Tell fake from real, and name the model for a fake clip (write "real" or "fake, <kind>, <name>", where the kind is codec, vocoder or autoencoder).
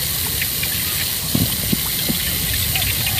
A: real